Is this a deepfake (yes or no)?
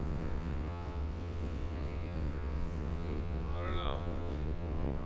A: yes